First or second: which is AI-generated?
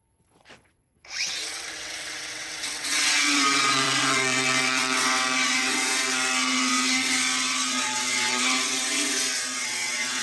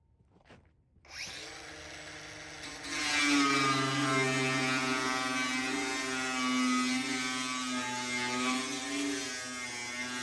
first